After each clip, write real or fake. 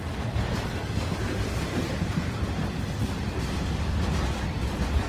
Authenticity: real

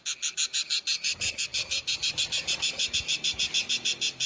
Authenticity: real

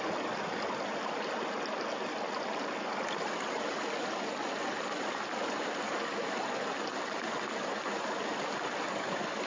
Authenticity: real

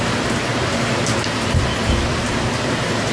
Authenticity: real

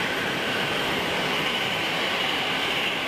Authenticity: fake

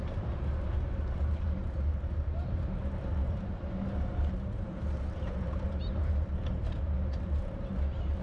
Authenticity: fake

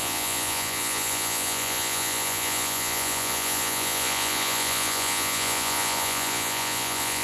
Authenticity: fake